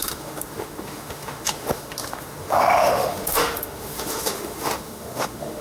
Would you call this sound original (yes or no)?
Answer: no